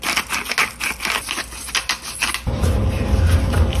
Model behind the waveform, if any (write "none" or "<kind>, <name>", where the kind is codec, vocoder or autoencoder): none